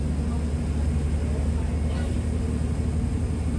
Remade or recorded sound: recorded